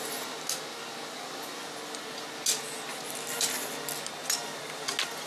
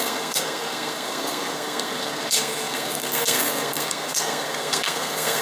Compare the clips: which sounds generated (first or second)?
second